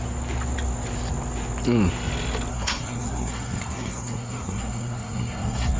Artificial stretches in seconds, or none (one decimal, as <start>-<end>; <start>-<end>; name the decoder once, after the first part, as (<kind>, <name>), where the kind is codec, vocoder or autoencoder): 2.5-5.8 (codec, SNAC)